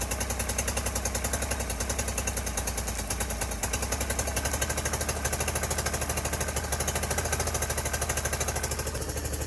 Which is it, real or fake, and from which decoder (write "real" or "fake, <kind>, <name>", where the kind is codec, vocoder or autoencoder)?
real